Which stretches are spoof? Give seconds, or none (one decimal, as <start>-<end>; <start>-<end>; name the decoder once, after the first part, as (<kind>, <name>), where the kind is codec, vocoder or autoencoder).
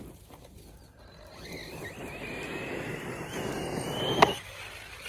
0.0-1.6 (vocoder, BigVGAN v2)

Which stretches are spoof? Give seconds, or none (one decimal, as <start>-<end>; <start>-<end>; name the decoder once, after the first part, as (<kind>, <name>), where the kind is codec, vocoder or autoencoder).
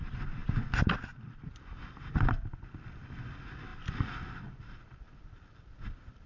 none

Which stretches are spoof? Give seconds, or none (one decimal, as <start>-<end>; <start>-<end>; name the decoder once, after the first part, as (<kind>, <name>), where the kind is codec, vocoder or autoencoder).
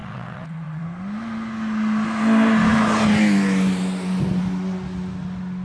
0.0-0.8 (vocoder, WaveNeXt)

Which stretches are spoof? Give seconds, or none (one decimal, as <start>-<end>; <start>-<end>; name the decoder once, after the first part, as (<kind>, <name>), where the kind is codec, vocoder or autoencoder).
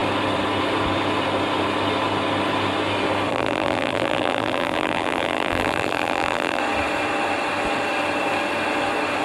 3.3-6.6 (vocoder, BigVGAN v2)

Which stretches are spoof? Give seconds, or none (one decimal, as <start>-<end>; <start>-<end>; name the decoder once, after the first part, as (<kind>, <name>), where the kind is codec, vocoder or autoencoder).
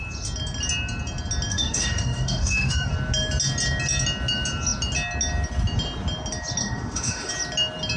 1.5-2.9 (autoencoder, DAC-VAE); 6.6-7.3